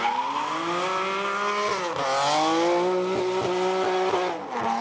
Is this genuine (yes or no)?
yes